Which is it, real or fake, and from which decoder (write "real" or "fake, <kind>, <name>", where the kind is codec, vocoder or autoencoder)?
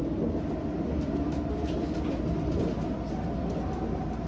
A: real